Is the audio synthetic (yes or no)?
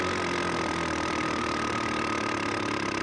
no